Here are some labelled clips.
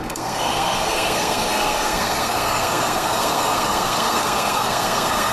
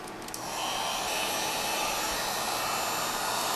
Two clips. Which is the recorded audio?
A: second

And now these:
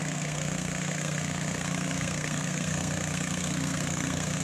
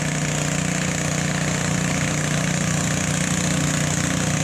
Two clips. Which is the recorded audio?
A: second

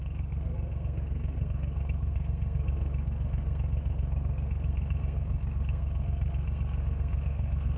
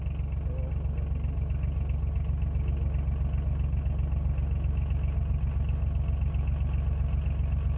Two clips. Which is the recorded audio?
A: second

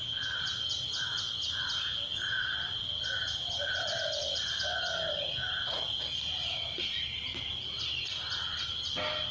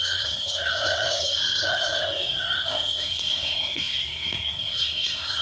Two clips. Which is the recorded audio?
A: first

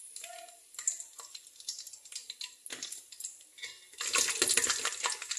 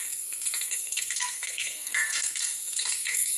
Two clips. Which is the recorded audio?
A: first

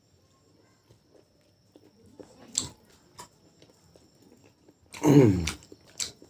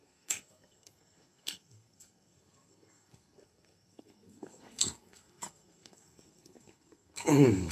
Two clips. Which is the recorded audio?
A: first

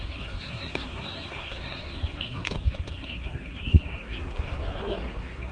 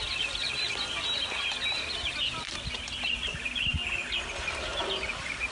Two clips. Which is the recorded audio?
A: second